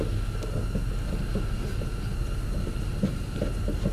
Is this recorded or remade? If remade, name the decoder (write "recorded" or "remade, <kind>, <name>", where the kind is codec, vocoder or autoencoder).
recorded